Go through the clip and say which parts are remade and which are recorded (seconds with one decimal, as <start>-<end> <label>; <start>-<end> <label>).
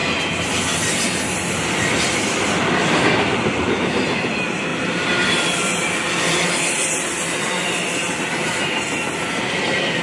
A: 0.0-3.6 remade; 3.6-4.7 recorded; 4.7-8.2 remade; 8.2-10.0 recorded